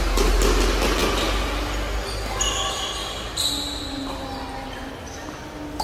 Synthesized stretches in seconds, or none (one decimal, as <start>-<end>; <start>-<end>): none